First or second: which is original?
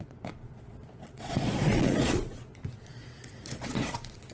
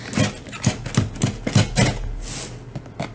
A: second